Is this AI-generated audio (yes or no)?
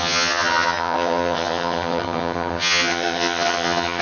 yes